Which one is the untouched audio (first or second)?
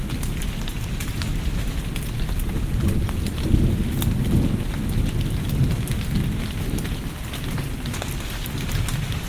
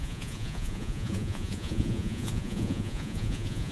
first